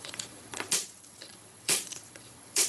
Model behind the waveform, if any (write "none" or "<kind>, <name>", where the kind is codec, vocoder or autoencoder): vocoder, Vocos